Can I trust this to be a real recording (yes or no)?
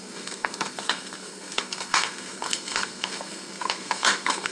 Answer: no